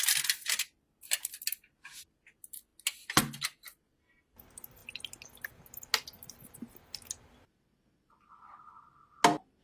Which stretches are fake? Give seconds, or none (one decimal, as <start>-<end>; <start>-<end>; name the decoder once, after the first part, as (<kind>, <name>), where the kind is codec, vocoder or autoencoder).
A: none